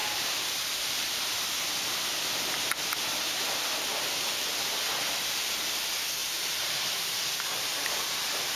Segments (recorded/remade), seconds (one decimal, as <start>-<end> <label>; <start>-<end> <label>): 0.0-1.3 remade; 1.3-6.2 recorded; 6.2-7.2 remade; 7.2-8.6 recorded